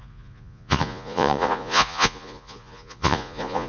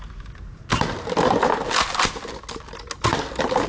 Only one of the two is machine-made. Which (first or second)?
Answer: first